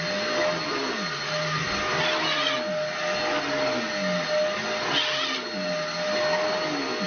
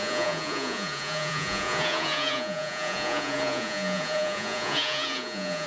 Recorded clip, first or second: first